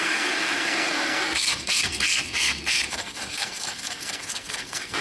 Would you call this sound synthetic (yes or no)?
yes